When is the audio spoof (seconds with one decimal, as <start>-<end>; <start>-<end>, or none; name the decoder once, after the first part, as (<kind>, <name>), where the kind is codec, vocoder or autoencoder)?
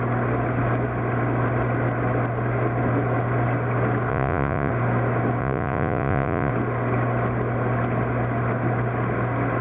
4.1-4.7 (vocoder, Vocos); 5.4-6.5